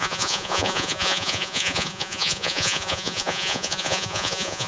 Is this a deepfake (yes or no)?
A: yes